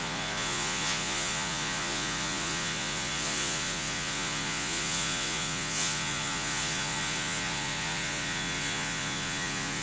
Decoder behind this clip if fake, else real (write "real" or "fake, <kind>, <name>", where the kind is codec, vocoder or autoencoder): fake, vocoder, Vocos